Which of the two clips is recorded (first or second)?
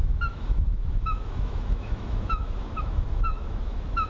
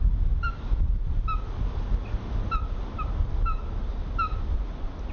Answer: second